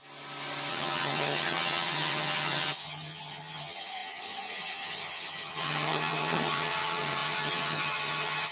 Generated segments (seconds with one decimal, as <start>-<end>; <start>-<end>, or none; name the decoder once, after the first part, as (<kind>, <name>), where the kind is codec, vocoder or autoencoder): 0.7-8.5 (vocoder, HiFi-GAN)